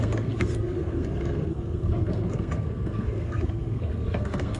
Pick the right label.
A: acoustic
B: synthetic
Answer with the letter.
B